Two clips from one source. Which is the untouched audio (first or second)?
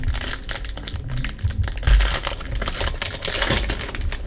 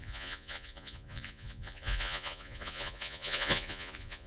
first